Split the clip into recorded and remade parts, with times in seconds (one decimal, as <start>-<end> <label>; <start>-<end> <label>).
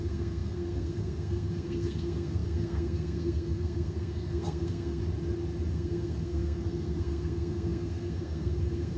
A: 0.0-5.0 remade; 5.0-5.7 recorded; 5.7-9.0 remade